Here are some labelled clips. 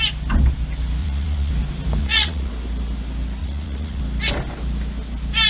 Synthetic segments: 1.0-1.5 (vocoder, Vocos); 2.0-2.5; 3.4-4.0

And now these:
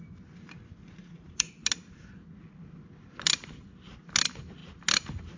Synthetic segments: 0.8-1.5 (vocoder, Vocos)

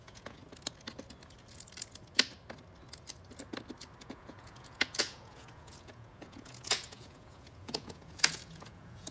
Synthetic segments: 0.0-0.4 (vocoder, Vocos); 4.0-9.1

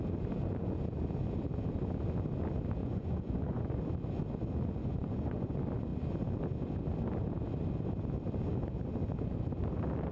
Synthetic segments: 2.8-3.8 (vocoder, Vocos); 4.8-5.5

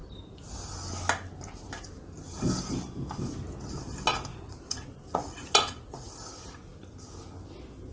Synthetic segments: 4.3-6.1 (vocoder, Vocos)

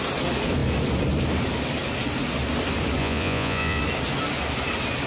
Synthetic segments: 3.0-3.8 (vocoder, Vocos)